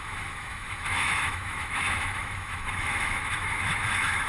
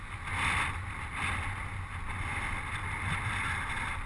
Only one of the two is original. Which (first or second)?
second